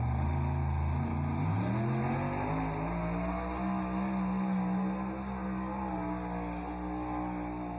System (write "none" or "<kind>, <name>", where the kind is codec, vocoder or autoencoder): none